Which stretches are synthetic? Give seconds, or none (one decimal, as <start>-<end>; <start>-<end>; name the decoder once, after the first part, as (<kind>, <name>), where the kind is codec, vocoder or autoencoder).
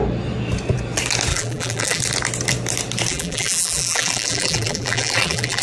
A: 1.3-2.0 (vocoder, BigVGAN v2); 3.1-5.6